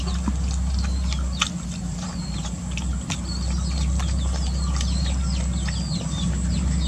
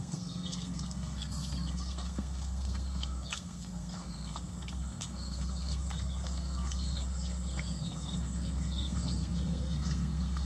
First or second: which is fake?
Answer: second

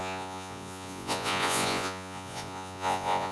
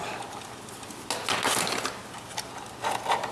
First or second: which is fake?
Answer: first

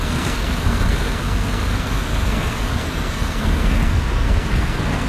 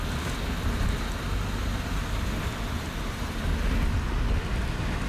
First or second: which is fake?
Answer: first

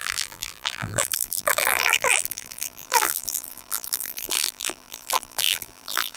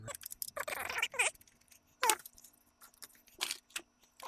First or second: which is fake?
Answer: first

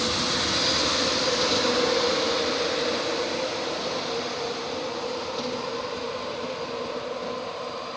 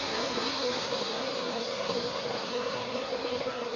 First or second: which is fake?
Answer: second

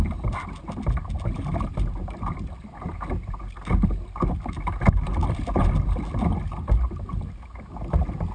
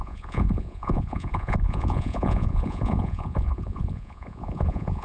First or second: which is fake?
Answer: second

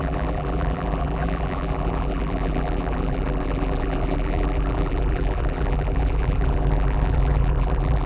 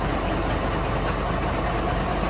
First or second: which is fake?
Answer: first